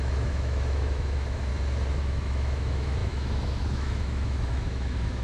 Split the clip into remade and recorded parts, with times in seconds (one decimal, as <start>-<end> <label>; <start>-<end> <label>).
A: 0.0-1.5 remade; 1.5-2.0 recorded; 2.0-5.2 remade